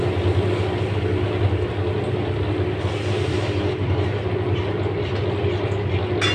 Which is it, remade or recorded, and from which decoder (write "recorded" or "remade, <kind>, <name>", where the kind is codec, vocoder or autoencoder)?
recorded